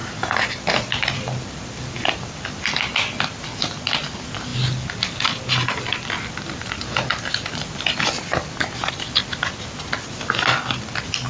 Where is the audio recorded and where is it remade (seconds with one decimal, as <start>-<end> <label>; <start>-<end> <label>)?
0.0-11.3 recorded